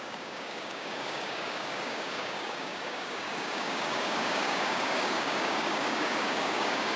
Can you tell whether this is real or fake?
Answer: fake